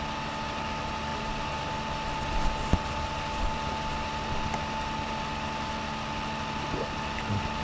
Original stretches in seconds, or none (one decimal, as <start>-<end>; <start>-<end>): 0.0-7.6